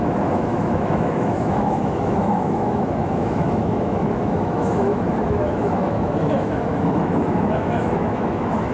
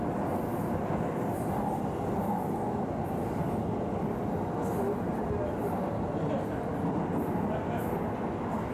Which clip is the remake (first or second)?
first